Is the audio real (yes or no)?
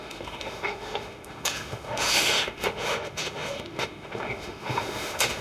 no